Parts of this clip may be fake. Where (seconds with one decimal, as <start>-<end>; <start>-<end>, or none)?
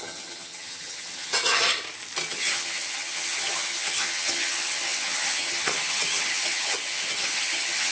0.0-1.7; 2.3-7.9